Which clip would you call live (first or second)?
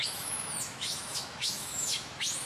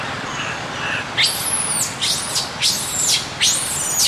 second